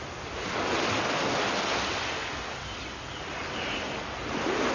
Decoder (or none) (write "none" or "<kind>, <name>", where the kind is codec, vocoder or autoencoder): none